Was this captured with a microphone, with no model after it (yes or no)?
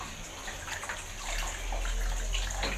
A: yes